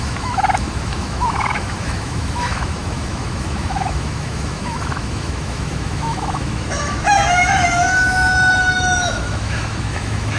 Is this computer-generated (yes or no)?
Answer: yes